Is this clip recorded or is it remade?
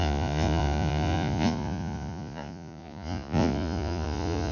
remade